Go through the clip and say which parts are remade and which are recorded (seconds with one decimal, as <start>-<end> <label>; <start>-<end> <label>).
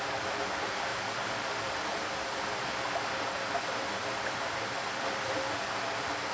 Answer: 0.0-6.3 recorded